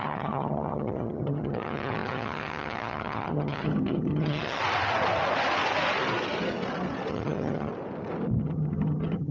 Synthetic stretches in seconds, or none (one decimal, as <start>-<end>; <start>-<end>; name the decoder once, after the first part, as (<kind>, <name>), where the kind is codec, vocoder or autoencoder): 0.0-4.6 (vocoder, HiFi-GAN); 7.1-7.7; 8.4-9.3